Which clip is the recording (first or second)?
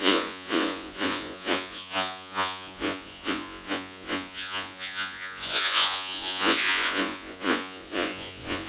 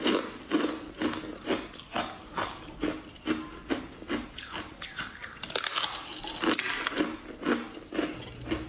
second